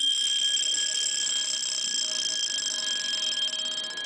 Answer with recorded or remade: recorded